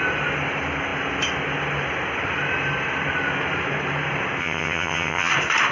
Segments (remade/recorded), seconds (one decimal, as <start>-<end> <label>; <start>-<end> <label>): 0.0-4.4 recorded; 4.4-5.3 remade; 5.3-5.7 recorded